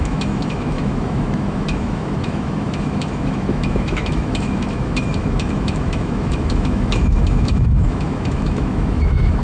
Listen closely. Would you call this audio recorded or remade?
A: remade